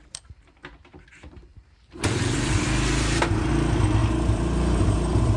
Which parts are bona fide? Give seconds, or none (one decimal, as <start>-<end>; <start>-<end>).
0.0-1.5; 3.5-4.0